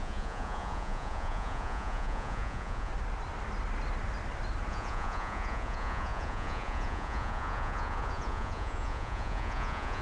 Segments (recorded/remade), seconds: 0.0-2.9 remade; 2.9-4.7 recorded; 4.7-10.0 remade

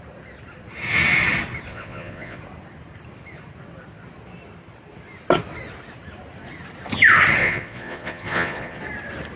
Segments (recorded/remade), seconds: 0.0-1.7 recorded; 1.7-2.4 remade; 2.4-7.4 recorded; 7.4-8.8 remade; 8.8-9.4 recorded